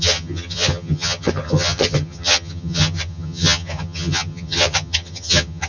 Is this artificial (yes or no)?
yes